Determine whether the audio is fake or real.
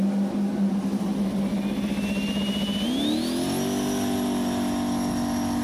real